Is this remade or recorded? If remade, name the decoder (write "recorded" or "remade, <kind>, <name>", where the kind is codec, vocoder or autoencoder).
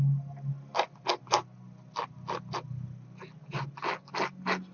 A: recorded